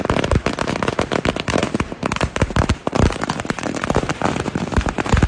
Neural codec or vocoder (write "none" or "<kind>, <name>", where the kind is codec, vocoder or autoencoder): vocoder, BigVGAN v2